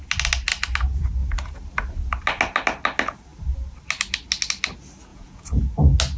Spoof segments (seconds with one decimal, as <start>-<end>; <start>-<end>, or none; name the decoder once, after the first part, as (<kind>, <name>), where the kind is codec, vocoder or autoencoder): 5.1-5.6 (vocoder, Vocos)